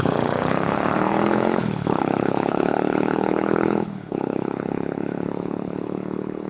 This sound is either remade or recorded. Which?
remade